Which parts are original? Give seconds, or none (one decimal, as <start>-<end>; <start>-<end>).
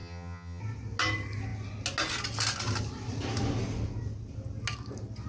0.6-5.3